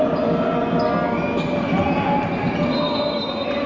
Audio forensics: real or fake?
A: real